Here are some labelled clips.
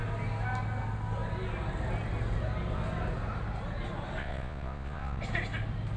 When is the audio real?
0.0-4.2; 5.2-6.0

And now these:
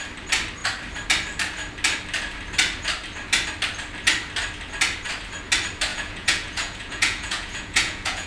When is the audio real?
0.0-5.9